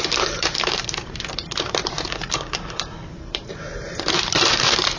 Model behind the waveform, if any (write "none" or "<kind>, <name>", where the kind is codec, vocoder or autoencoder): vocoder, BigVGAN v2